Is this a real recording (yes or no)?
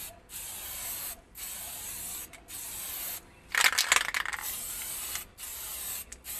yes